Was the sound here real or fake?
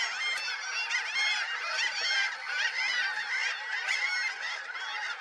real